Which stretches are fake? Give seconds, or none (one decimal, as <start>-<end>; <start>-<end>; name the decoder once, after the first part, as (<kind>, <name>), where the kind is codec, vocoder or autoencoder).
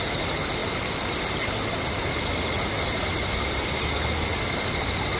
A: none